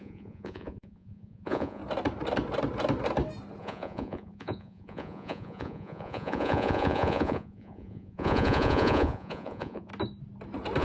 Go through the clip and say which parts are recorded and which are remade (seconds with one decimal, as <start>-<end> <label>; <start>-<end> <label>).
0.0-1.8 remade; 1.8-3.6 recorded; 3.6-9.9 remade; 9.9-10.8 recorded